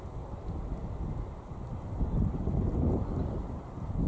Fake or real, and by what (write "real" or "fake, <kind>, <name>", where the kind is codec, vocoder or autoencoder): real